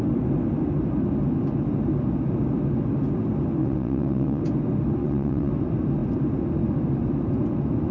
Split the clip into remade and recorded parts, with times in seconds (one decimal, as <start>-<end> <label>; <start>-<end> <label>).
0.0-3.6 recorded; 3.6-4.4 remade; 4.4-5.0 recorded; 5.0-5.5 remade; 5.5-7.9 recorded